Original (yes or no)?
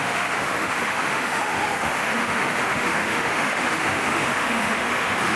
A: no